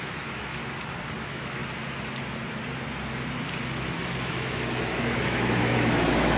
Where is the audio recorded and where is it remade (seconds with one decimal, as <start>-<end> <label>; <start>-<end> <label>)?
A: 0.0-0.6 remade; 0.6-1.2 recorded; 1.2-1.6 remade; 1.6-4.2 recorded; 4.2-6.4 remade